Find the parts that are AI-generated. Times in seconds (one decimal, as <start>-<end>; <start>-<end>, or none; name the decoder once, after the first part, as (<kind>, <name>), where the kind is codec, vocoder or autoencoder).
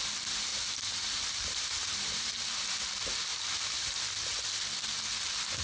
0.5-2.3 (vocoder, BigVGAN v2); 3.3-3.9